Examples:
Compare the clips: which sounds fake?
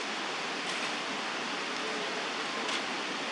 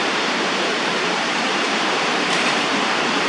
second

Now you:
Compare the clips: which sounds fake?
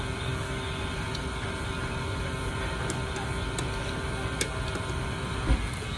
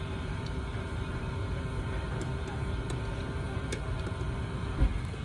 second